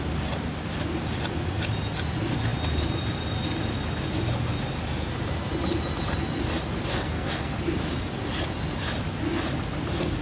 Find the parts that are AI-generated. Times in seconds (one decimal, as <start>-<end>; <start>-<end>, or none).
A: 6.9-7.6